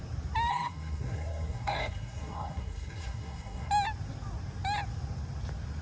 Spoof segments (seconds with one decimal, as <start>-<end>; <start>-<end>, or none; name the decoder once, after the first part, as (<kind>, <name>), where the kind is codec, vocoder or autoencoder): 0.5-3.7 (codec, SNAC)